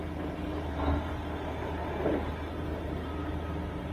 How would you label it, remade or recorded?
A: recorded